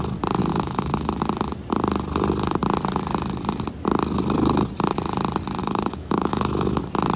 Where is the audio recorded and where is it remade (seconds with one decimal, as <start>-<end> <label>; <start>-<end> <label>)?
0.0-0.5 recorded; 0.5-1.2 remade; 1.2-5.6 recorded; 5.6-6.8 remade; 6.8-7.2 recorded